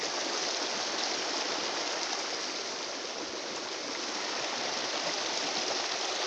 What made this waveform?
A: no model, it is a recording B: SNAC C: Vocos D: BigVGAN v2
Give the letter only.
A